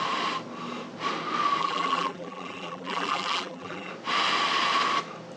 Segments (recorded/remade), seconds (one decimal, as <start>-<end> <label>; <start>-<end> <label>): 0.0-1.6 recorded; 1.6-3.9 remade; 3.9-5.4 recorded

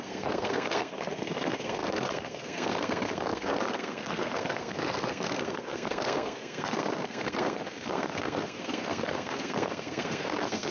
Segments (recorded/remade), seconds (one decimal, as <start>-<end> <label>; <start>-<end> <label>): 0.0-10.7 remade

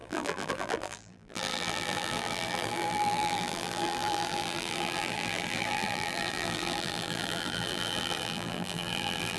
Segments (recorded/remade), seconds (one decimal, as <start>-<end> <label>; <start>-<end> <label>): 0.0-9.4 remade

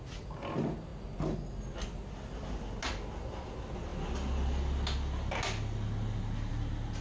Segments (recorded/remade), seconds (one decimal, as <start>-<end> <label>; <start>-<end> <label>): 0.0-7.0 recorded

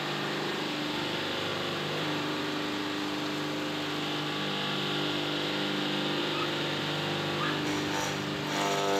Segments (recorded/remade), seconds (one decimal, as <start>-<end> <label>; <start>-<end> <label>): 0.0-1.5 recorded; 1.5-2.4 remade; 2.4-6.2 recorded; 6.2-6.8 remade; 6.8-9.0 recorded

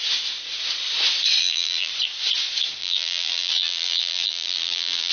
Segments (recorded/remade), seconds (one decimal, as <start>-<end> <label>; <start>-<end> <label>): 0.0-1.4 recorded; 1.4-1.9 remade; 1.9-2.8 recorded; 2.8-5.1 remade